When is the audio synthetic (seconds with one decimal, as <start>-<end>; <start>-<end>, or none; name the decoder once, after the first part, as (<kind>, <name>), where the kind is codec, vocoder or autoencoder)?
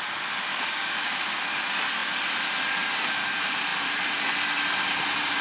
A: 0.5-1.2 (codec, DAC)